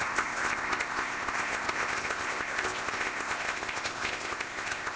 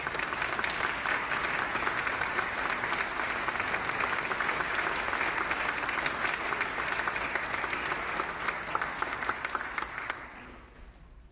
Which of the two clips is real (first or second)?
second